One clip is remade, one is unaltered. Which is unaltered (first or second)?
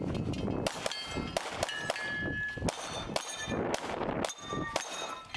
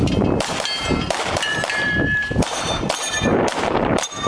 first